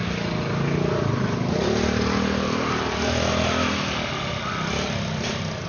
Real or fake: real